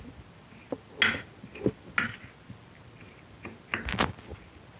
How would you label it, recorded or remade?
recorded